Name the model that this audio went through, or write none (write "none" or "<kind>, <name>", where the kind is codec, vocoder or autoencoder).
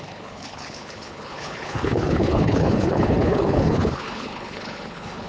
codec, HILCodec